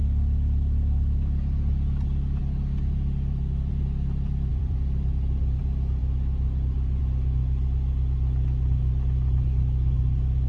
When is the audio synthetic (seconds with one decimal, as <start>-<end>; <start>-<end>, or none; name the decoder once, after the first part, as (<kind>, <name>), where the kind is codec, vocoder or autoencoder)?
2.4-3.7 (vocoder, BigVGAN v2); 4.5-5.6